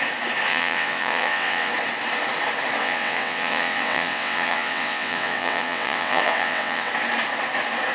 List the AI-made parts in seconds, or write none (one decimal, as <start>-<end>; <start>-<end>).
0.5-1.7; 2.8-6.9